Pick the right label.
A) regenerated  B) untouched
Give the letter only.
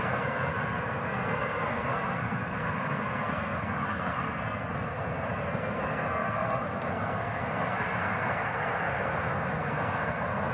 A